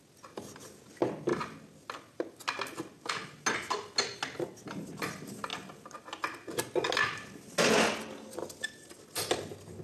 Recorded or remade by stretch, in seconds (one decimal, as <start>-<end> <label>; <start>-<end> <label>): 0.0-9.8 recorded